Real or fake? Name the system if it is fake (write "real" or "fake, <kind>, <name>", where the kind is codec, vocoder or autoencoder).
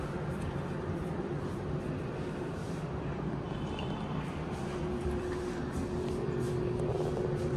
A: fake, vocoder, BigVGAN v2